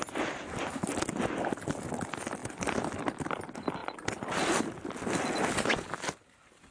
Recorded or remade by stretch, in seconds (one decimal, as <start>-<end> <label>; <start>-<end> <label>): 0.0-6.7 recorded